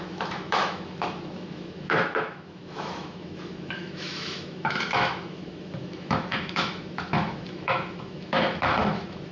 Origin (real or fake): fake